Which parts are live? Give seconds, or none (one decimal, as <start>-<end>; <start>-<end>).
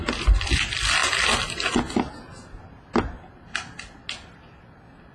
0.0-5.1